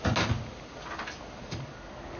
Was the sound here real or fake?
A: real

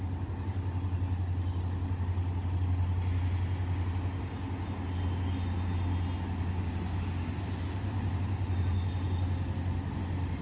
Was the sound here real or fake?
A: real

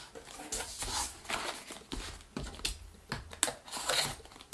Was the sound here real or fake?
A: real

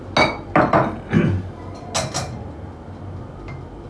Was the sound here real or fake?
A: real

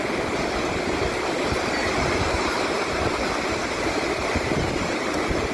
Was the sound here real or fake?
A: real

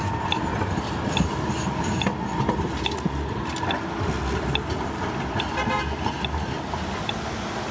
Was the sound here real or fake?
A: real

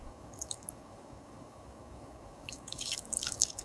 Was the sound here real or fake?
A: fake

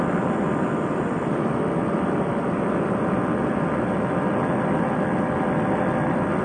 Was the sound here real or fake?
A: real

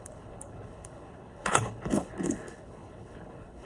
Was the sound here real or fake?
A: fake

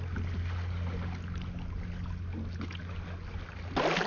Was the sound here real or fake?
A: real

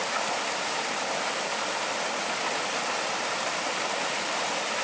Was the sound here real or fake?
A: real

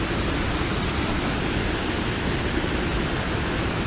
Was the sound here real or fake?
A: real